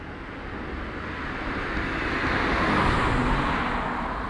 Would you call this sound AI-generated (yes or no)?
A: no